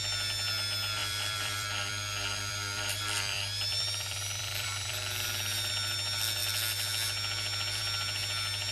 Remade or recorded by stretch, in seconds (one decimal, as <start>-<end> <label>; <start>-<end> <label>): 0.0-1.0 recorded; 1.0-5.7 remade; 5.7-8.7 recorded